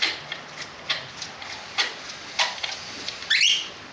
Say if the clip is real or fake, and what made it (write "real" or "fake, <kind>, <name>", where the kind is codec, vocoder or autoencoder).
real